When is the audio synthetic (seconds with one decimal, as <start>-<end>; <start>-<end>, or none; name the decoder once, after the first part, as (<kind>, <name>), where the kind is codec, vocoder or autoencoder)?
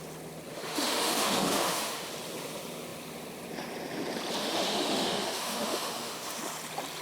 0.5-2.1 (autoencoder, DAC-VAE); 4.4-6.4